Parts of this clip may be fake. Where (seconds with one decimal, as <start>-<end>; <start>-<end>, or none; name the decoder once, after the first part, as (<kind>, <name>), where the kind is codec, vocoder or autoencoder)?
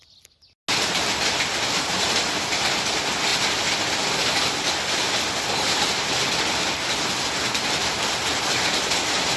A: none